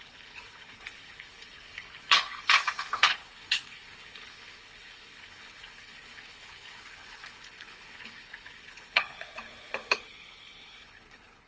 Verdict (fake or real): fake